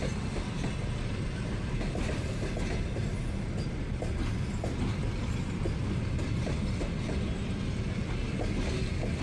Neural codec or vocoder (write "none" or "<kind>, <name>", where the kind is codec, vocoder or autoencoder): none